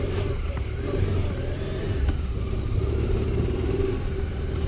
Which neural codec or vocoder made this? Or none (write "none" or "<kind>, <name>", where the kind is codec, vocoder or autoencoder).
vocoder, BigVGAN v2